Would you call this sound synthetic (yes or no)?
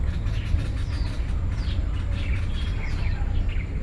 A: no